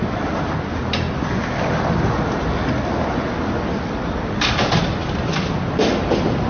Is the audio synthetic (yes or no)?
no